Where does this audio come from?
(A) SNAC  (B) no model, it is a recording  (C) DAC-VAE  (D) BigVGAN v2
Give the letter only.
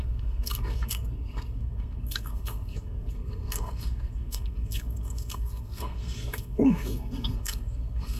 A